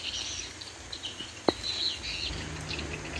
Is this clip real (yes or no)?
yes